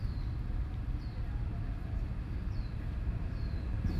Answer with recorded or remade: remade